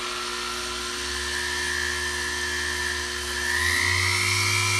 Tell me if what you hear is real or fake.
real